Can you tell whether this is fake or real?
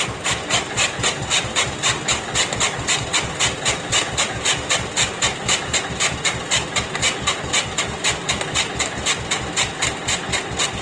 real